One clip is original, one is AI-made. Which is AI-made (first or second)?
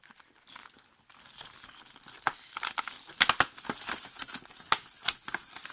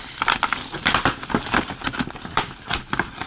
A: second